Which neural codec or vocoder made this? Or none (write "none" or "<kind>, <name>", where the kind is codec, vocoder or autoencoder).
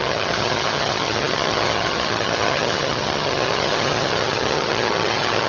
vocoder, HiFi-GAN